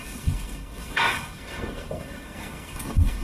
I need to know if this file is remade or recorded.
remade